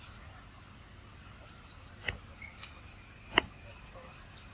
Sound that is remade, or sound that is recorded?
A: recorded